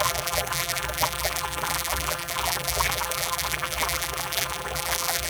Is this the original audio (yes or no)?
no